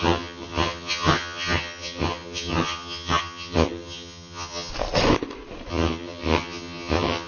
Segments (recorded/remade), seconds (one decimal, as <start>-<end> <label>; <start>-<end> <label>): 0.0-4.7 remade; 4.7-5.7 recorded; 5.7-7.3 remade